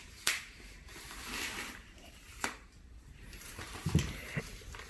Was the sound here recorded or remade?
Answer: remade